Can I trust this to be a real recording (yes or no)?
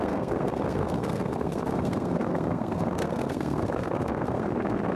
no